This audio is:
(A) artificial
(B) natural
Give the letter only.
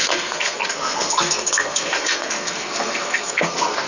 A